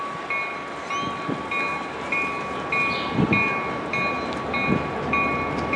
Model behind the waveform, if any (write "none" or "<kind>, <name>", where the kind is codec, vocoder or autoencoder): none